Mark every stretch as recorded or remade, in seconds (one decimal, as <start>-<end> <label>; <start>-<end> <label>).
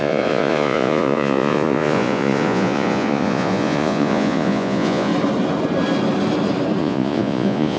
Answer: 0.0-5.1 remade; 5.1-6.8 recorded; 6.8-7.8 remade